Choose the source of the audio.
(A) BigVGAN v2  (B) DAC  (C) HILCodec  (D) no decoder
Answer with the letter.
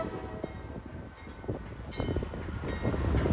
D